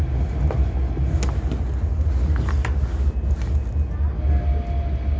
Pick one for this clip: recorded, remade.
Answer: recorded